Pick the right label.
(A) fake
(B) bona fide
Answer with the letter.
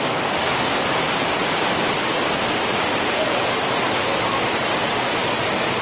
B